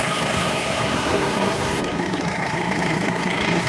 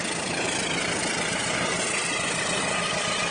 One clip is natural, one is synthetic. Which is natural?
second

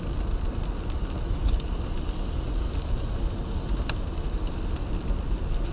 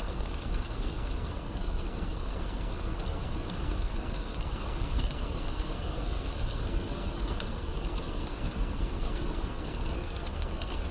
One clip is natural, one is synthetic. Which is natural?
first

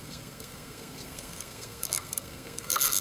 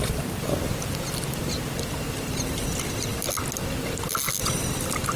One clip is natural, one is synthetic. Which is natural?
second